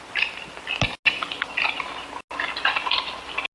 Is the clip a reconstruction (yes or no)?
no